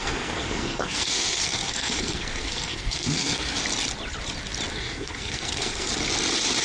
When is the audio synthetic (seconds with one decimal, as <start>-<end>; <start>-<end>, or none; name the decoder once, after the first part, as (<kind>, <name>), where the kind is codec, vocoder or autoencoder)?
0.0-3.6 (codec, SNAC); 4.7-5.9